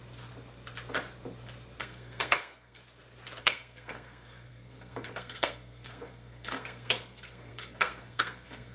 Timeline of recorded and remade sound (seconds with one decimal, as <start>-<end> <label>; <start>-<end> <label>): 0.0-1.8 recorded; 1.8-2.8 remade; 2.8-3.4 recorded; 3.4-8.7 remade